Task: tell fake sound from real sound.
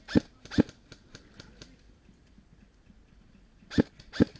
real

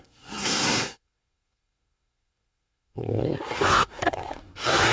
fake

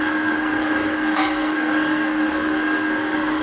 fake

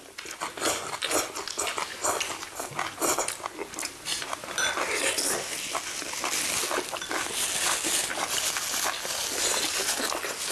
real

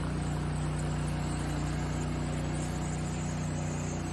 real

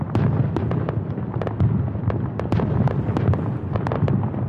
real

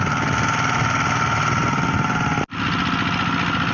real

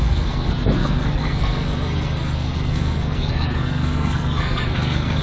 fake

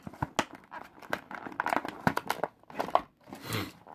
real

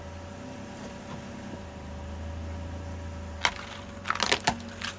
real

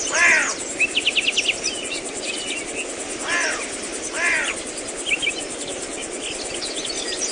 real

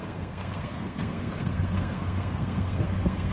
fake